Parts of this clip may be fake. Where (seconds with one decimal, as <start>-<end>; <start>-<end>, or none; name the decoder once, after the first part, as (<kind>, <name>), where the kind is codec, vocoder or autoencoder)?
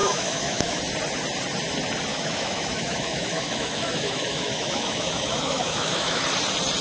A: 0.0-0.8 (autoencoder, DAC-VAE); 2.1-6.2